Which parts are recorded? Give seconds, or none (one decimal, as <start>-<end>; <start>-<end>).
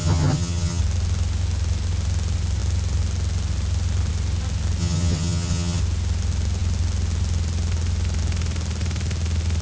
0.8-4.8; 5.8-9.6